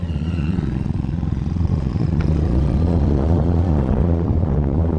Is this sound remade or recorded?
remade